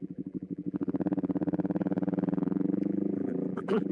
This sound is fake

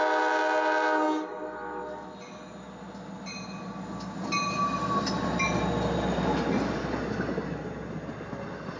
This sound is real